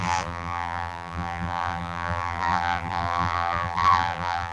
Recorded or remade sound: remade